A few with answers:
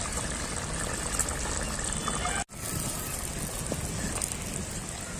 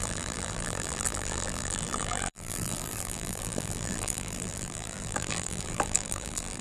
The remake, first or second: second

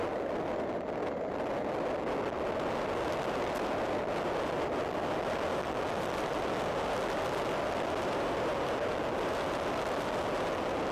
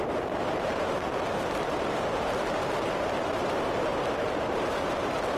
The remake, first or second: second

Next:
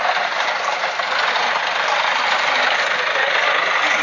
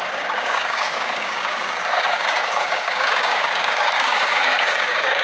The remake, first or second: second